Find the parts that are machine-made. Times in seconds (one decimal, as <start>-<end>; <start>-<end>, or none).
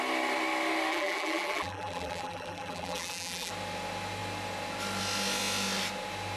0.9-3.5